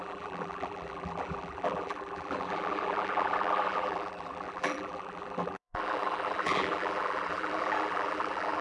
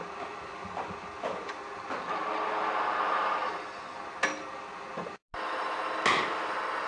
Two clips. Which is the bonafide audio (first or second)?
second